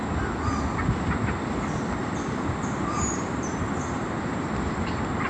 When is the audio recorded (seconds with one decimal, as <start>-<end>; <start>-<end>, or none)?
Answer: 0.0-2.0